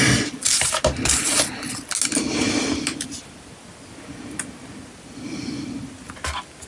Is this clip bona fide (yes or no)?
yes